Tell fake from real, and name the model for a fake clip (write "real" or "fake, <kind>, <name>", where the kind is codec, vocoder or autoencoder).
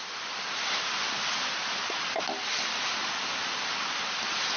real